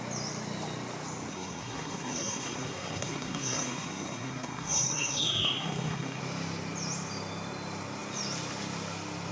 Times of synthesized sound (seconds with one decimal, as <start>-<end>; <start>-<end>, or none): 1.3-6.2